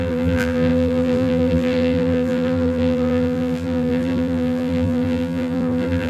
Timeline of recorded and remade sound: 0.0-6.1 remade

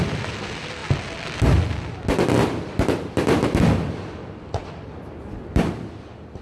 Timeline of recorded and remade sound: 0.0-0.8 remade; 0.8-2.6 recorded; 2.6-6.4 remade

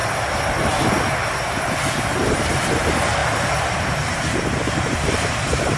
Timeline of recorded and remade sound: 0.0-2.0 recorded; 2.0-5.8 remade

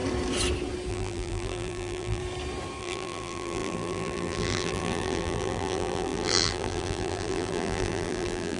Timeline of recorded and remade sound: 0.0-0.9 recorded; 0.9-2.2 remade; 2.2-2.8 recorded; 2.8-8.6 remade

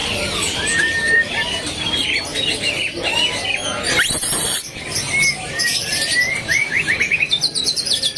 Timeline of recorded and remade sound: 0.0-2.3 remade; 2.3-5.5 recorded; 5.5-8.2 remade

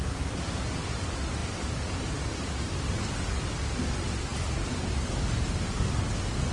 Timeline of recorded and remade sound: 0.0-0.6 remade; 0.6-6.5 recorded